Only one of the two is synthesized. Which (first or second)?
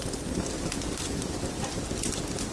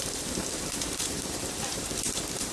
second